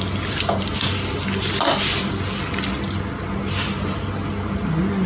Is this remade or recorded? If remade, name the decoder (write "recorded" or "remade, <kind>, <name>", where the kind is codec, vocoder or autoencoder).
recorded